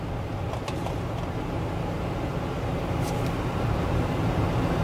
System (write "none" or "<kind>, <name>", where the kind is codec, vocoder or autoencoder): none